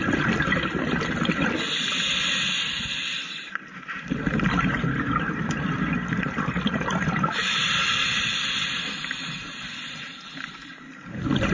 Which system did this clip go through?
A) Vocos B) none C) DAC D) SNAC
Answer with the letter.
B